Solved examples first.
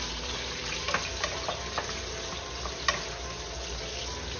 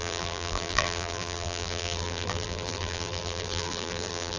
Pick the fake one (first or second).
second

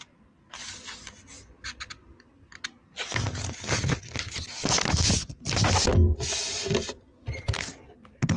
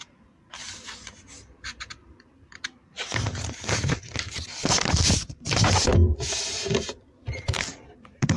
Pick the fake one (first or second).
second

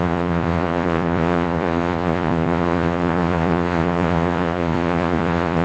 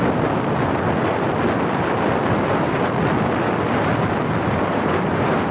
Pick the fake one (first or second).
first